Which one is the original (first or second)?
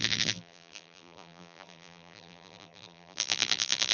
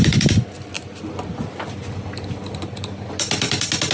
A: second